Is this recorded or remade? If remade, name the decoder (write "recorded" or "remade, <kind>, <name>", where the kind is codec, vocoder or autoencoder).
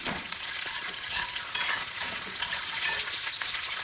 remade, vocoder, Vocos